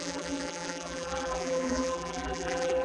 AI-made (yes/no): yes